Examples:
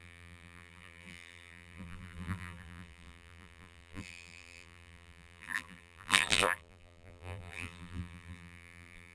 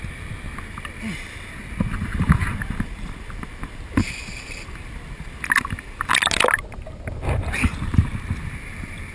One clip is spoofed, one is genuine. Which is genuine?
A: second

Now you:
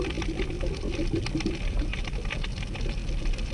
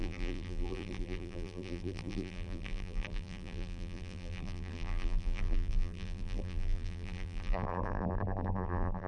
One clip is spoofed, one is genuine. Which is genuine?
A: first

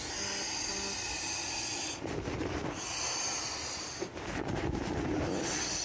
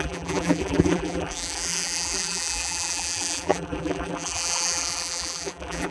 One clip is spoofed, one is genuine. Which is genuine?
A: first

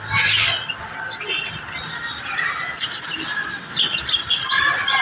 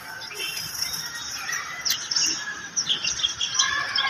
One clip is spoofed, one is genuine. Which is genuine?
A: first